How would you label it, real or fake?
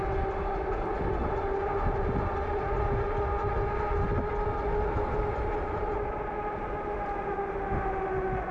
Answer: real